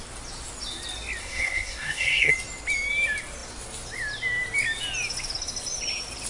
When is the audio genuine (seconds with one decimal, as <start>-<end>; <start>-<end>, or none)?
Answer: 0.0-1.2; 2.3-6.3